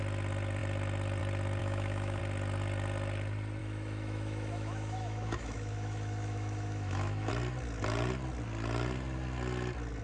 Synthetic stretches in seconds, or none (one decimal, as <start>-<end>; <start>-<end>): 1.6-2.2; 3.6-7.3